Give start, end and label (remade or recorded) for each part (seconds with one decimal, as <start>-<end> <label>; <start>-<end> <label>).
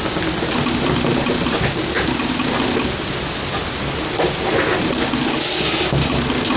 0.0-6.6 recorded